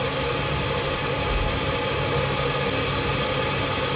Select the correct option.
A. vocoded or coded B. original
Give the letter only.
B